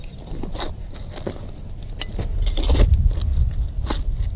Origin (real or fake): real